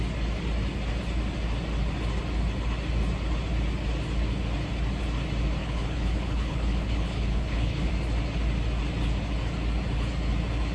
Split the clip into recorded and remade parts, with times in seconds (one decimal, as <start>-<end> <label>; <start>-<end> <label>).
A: 0.0-5.6 recorded; 5.6-7.9 remade; 7.9-10.7 recorded